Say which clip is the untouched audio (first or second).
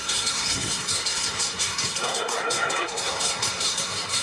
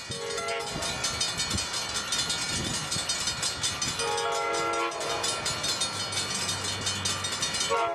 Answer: second